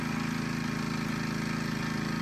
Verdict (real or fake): real